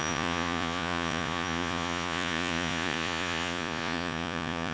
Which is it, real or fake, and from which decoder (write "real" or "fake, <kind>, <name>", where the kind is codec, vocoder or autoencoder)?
fake, vocoder, Vocos